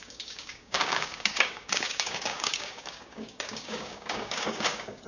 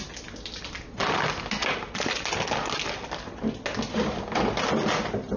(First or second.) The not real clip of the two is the first